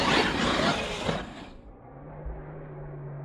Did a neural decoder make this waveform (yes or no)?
no